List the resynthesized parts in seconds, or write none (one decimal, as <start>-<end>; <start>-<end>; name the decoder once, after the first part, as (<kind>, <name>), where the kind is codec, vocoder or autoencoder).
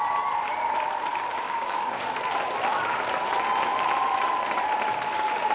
1.1-2.0 (codec, DAC)